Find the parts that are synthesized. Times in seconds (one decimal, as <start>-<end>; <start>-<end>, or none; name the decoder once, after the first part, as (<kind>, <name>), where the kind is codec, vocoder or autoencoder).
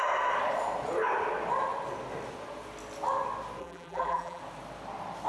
3.6-4.4 (vocoder, BigVGAN v2)